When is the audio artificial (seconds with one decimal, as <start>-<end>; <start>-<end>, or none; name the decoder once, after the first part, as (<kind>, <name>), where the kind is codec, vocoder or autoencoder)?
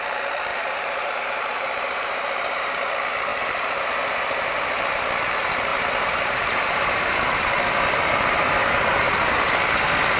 0.5-2.7 (vocoder, BigVGAN v2); 3.3-5.1; 5.7-7.4